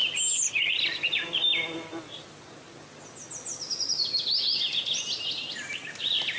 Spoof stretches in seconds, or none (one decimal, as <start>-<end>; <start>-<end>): none